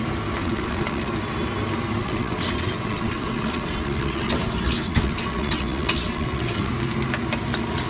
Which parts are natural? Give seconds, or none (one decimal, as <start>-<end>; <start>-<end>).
0.0-0.4; 1.1-2.0; 6.7-7.9